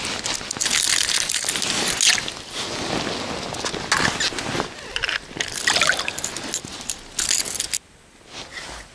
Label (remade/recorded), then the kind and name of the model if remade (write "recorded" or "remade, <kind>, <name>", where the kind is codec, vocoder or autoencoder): recorded